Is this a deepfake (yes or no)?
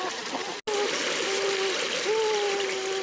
no